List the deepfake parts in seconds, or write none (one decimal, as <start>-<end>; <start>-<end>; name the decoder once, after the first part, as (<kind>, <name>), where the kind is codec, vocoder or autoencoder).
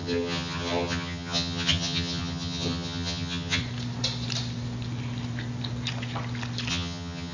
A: 0.0-3.6 (vocoder, HiFi-GAN); 6.7-7.3